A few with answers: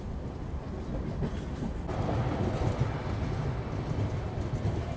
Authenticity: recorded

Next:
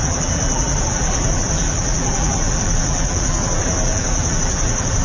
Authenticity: remade